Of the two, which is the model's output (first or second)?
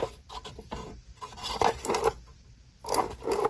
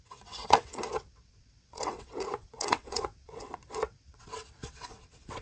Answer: second